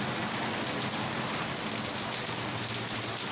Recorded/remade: recorded